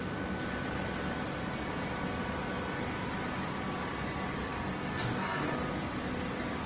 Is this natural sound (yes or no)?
yes